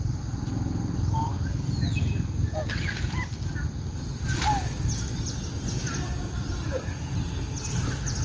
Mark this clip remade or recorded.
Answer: recorded